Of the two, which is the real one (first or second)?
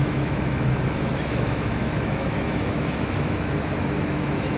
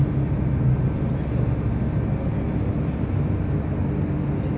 second